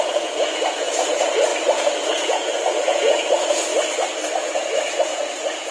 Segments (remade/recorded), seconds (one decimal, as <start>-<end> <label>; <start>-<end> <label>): 0.0-1.5 remade; 1.5-2.1 recorded; 2.1-3.7 remade; 3.7-4.4 recorded; 4.4-5.7 remade